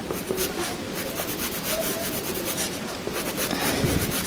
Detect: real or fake fake